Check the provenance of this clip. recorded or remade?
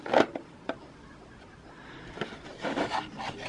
recorded